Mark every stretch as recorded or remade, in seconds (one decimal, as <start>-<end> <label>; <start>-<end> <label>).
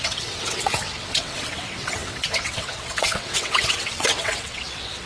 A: 0.0-5.1 remade